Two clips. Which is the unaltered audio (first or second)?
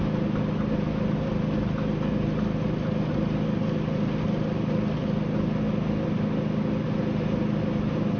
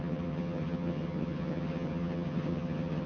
first